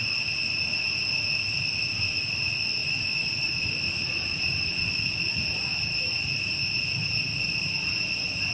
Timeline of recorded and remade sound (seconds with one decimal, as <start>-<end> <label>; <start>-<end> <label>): 0.0-2.8 recorded; 2.8-4.8 remade; 4.8-5.7 recorded; 5.7-6.8 remade; 6.8-8.5 recorded